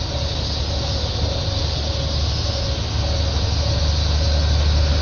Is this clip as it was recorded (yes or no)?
yes